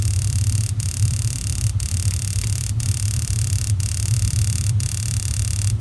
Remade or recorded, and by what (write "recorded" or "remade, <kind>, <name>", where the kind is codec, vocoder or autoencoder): remade, vocoder, BigVGAN v2